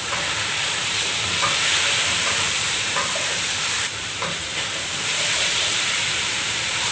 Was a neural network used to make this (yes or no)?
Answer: yes